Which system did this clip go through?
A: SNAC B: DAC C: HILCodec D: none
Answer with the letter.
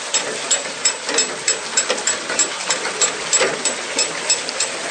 D